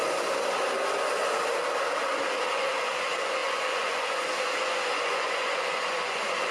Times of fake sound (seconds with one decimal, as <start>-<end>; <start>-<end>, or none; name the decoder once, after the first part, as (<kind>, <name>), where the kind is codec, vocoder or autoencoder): 2.5-6.5 (vocoder, Vocos)